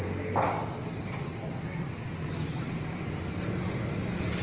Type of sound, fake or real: real